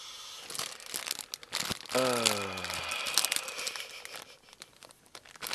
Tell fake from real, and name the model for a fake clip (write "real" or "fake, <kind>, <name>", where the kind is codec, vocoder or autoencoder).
real